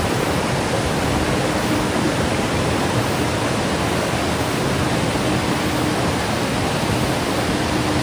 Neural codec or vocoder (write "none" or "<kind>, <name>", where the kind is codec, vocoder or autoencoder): none